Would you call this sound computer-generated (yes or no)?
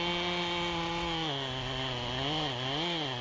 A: no